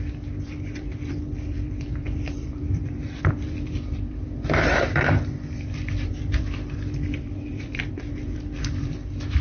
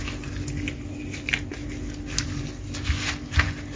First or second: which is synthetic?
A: first